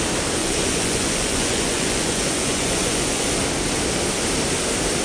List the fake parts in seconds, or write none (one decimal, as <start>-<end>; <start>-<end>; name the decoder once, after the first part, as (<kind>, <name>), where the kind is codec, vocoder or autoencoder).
0.4-3.3 (vocoder, Vocos)